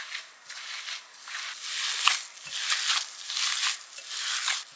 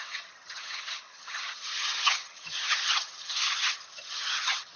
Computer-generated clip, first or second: second